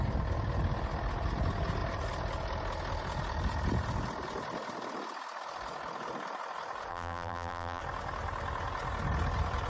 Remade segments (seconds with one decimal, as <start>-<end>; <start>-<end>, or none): 6.9-7.8